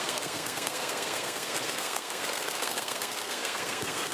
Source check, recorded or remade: remade